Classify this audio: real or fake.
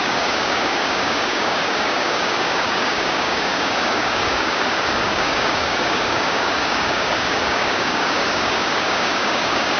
fake